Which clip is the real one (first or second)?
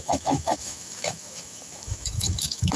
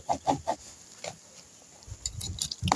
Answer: second